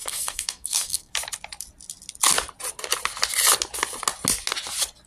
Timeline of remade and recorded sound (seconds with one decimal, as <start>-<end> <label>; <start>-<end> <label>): 0.0-1.1 remade; 1.1-5.1 recorded